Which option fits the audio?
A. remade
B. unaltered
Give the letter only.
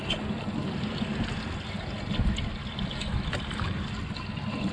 B